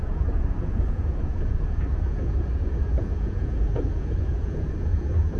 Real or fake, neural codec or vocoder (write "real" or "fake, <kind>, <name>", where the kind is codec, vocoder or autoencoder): fake, vocoder, Vocos